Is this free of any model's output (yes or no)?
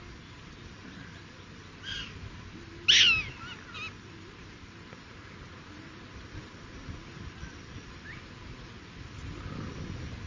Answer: yes